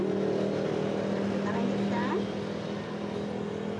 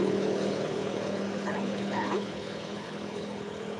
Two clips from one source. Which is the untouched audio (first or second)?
first